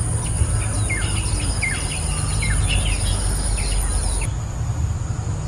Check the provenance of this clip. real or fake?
real